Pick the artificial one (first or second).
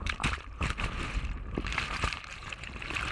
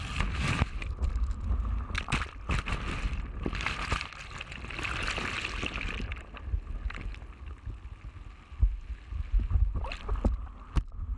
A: first